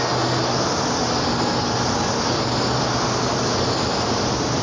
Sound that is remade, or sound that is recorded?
recorded